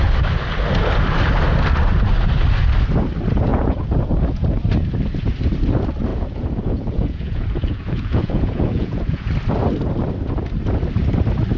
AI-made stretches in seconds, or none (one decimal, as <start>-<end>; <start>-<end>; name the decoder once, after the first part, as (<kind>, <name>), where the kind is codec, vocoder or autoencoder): 3.5-4.6 (vocoder, Vocos); 6.1-9.3